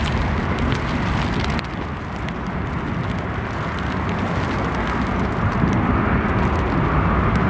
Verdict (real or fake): real